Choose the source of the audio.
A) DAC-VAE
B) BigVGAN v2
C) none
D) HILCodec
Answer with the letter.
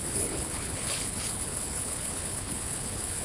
D